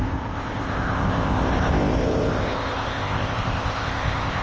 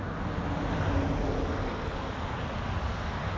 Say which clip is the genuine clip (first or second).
second